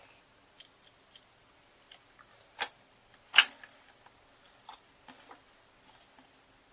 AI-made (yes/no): no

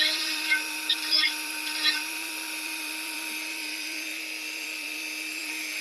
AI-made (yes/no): yes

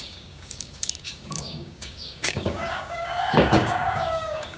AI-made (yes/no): yes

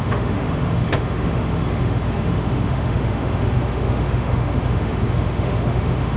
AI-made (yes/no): yes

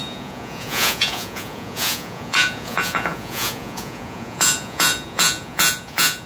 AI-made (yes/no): yes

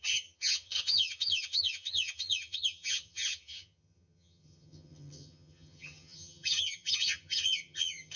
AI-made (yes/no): yes